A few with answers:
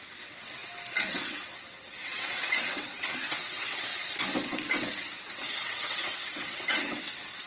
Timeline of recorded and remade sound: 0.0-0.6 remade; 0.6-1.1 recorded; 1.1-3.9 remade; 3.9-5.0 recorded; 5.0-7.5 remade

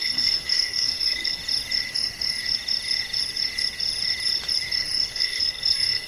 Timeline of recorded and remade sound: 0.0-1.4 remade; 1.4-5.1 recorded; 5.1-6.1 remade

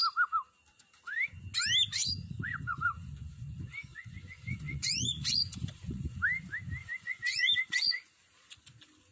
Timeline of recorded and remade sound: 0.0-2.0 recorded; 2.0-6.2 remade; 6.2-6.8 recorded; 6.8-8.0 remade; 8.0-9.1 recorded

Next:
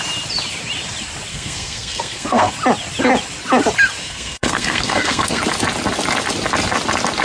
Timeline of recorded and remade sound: 0.0-1.3 recorded; 1.3-2.5 remade; 2.5-4.0 recorded; 4.0-5.4 remade; 5.4-7.2 recorded

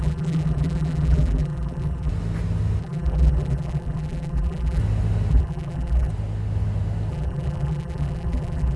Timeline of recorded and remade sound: 0.0-2.1 remade; 2.1-2.8 recorded; 2.8-4.8 remade; 4.8-5.3 recorded; 5.3-6.1 remade; 6.1-7.1 recorded; 7.1-8.8 remade

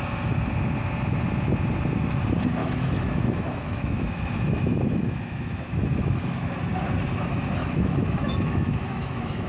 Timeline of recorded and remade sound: 0.0-2.6 recorded; 2.6-6.6 remade; 6.6-7.6 recorded; 7.6-9.5 remade